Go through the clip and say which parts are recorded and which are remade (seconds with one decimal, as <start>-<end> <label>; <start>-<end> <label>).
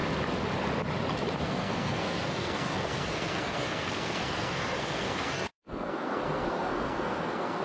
0.0-1.4 recorded; 1.4-7.6 remade